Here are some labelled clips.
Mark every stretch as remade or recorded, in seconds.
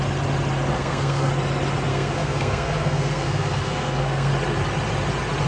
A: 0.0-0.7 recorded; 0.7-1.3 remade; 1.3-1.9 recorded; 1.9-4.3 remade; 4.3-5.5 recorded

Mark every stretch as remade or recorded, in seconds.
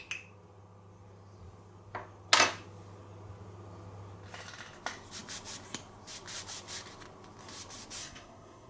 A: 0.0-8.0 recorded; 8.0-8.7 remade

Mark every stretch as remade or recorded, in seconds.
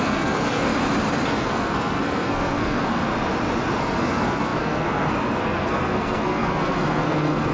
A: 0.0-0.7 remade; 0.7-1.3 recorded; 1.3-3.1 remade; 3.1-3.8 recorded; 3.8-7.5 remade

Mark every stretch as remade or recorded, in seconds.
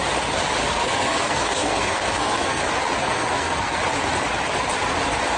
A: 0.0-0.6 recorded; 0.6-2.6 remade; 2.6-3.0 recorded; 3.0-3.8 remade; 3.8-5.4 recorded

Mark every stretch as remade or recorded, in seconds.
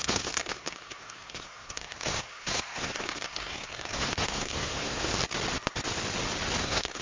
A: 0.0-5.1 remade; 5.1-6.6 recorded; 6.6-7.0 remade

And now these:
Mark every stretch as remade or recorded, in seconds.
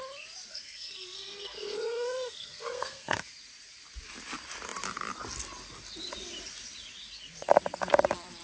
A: 0.0-0.5 recorded; 0.5-3.3 remade; 3.3-8.4 recorded